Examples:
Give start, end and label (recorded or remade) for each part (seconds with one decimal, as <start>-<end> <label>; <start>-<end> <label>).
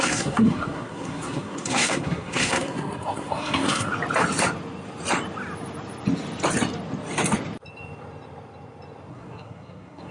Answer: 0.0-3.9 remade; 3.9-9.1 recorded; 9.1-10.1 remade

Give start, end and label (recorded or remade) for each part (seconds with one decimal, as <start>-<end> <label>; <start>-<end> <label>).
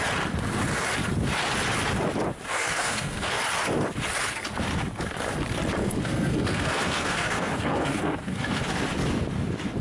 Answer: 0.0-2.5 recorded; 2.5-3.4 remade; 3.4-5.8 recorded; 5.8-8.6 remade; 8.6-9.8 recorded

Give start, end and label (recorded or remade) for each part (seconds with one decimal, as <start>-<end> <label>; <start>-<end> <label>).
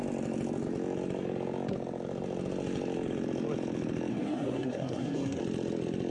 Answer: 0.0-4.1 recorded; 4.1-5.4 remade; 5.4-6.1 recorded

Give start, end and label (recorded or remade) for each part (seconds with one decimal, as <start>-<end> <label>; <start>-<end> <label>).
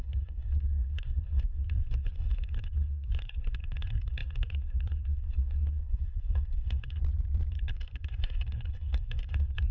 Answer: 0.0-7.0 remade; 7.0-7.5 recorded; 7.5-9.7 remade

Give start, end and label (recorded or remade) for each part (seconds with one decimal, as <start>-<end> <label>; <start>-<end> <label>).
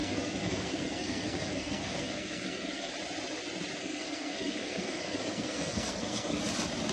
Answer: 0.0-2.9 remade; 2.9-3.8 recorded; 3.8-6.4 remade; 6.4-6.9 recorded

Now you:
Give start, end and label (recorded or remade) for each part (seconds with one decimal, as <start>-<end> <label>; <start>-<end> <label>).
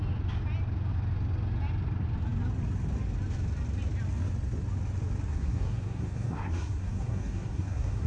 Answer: 0.0-5.3 recorded; 5.3-8.1 remade